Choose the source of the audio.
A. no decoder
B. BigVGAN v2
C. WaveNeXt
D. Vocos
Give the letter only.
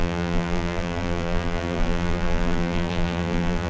B